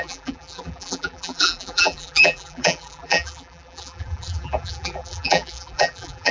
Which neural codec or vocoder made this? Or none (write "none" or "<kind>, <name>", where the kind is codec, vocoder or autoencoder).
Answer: vocoder, BigVGAN v2